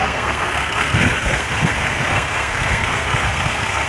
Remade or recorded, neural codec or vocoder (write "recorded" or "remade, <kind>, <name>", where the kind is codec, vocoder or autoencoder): remade, codec, SNAC